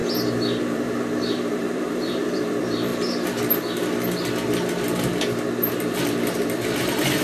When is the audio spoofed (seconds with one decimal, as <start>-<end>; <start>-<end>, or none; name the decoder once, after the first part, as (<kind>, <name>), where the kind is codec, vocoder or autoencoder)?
0.6-2.9 (vocoder, BigVGAN v2); 6.8-7.2